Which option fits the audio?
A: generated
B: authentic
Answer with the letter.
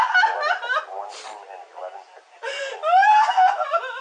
B